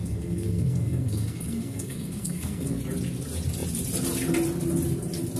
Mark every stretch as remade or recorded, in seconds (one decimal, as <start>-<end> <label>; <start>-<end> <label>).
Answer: 0.0-2.8 remade; 2.8-5.4 recorded